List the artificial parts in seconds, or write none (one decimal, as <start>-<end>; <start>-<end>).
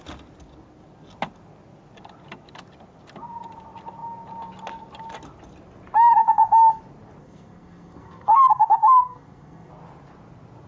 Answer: 6.2-6.8; 7.2-9.7